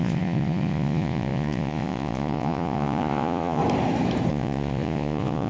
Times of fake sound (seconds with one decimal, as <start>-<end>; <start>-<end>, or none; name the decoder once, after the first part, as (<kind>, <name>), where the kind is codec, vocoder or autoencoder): 0.0-3.6 (vocoder, Vocos); 4.3-5.5